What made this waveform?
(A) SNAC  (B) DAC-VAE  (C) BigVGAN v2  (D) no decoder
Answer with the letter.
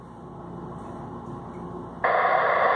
D